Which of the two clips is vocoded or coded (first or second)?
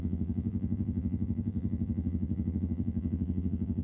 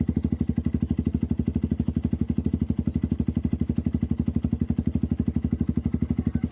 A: first